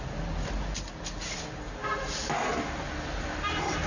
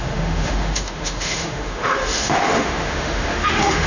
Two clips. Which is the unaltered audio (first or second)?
first